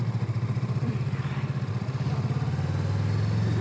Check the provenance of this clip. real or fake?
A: real